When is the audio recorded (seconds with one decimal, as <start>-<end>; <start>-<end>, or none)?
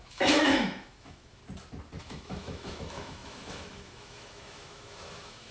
1.4-2.0